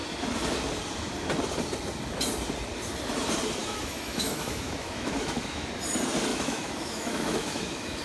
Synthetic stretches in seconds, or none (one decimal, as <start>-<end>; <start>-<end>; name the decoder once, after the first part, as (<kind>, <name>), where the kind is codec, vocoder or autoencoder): 3.6-5.7 (autoencoder, DAC-VAE); 6.3-8.0